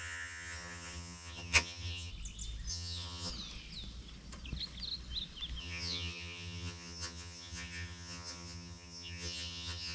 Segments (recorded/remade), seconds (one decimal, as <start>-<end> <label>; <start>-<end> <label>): 0.0-2.1 remade; 2.1-2.7 recorded; 2.7-3.3 remade; 3.3-5.6 recorded; 5.6-9.9 remade